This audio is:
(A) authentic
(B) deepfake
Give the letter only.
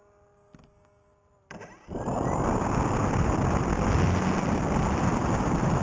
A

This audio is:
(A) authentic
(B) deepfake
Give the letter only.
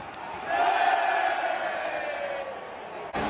A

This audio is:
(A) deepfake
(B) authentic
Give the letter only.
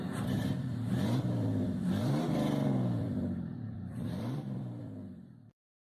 A